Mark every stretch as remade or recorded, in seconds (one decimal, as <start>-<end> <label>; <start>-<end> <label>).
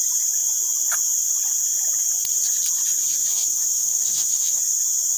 0.0-3.2 recorded; 3.2-4.6 remade; 4.6-5.2 recorded